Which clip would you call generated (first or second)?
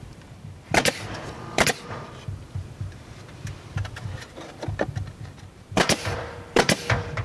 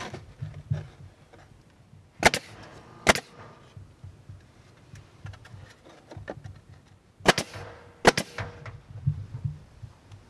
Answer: first